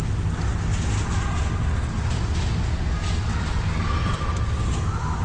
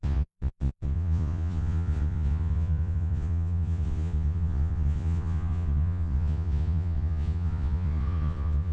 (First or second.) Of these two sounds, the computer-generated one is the second